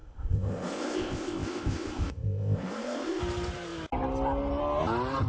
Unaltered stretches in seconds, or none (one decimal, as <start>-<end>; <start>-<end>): 3.2-5.3

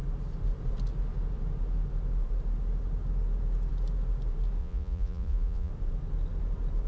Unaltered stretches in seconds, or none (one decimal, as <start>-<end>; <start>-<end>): 0.0-4.6; 5.7-6.9